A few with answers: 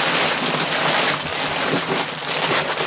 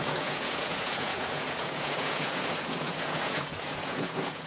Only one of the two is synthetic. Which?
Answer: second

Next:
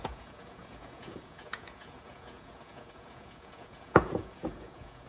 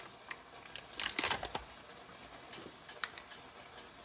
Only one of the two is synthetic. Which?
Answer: first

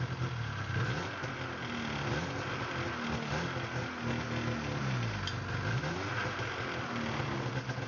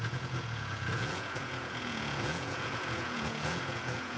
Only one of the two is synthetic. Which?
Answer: second